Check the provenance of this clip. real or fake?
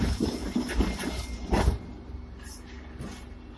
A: real